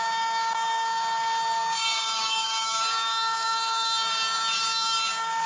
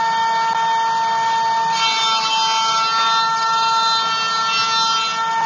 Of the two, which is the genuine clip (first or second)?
second